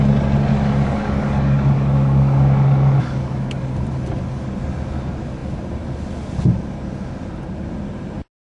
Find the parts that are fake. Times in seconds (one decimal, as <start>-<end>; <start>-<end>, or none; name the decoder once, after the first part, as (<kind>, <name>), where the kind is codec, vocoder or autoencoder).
0.5-3.7 (codec, DAC)